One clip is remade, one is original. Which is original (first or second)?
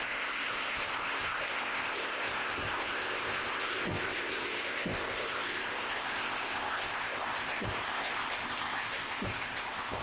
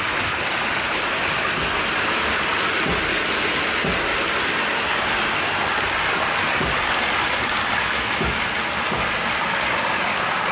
second